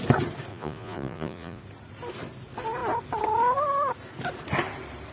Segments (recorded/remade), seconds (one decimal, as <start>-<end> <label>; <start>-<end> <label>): 0.0-0.5 recorded; 0.5-1.6 remade; 1.6-5.1 recorded